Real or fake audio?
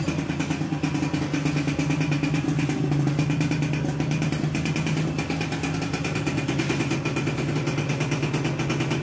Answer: real